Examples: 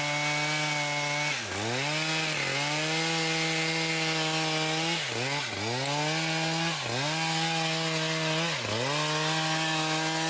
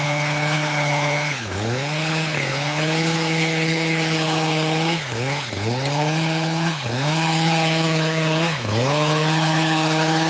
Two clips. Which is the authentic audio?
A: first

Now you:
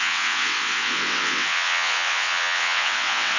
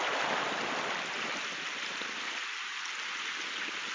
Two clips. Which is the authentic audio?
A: second